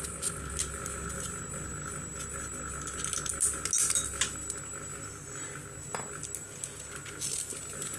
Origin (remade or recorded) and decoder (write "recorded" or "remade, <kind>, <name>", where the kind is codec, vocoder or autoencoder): recorded